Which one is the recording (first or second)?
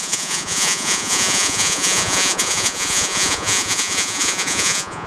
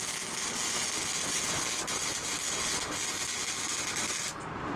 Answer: second